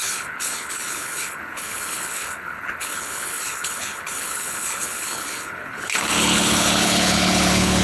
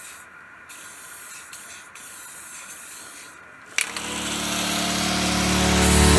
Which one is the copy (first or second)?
first